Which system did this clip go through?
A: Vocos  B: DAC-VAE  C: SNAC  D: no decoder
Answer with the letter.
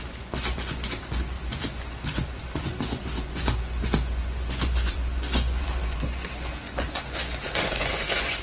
A